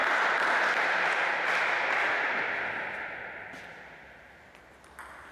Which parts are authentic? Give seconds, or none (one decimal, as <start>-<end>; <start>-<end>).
0.0-5.3